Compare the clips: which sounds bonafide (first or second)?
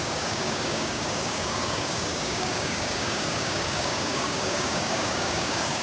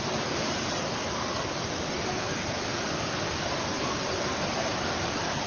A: second